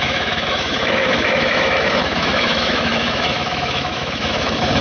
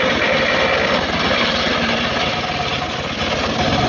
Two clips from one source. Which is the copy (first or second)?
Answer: first